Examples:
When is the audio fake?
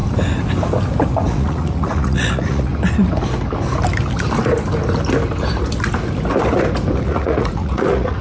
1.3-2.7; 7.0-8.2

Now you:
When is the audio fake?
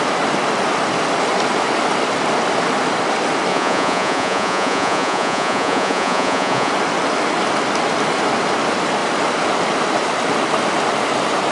3.5-6.7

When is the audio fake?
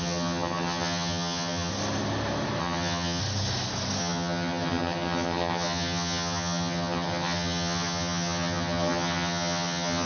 0.0-1.7; 2.6-3.2; 4.0-10.1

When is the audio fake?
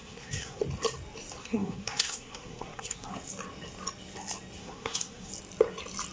0.0-0.6; 1.4-3.1; 4.6-5.3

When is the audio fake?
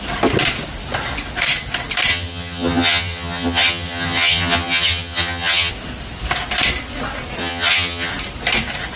2.1-5.7; 7.4-8.1